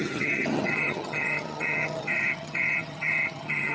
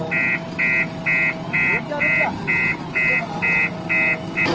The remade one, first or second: first